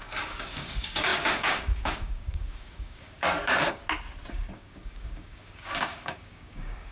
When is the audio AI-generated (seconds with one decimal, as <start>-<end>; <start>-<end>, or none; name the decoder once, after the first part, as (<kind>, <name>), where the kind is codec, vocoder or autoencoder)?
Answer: 0.0-3.8 (codec, DAC); 4.3-6.9